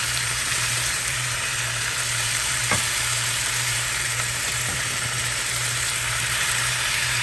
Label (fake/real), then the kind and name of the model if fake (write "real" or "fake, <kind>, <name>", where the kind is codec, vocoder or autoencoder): fake, vocoder, BigVGAN v2